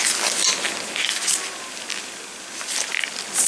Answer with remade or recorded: recorded